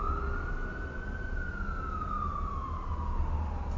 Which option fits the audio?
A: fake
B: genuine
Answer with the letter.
B